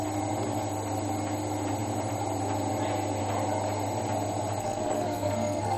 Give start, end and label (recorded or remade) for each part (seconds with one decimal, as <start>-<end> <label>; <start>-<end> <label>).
0.0-4.6 recorded; 4.6-5.8 remade